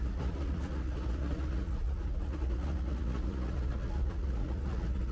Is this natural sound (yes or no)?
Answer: no